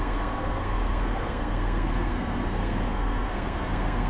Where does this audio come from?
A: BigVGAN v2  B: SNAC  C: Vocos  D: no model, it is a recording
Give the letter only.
B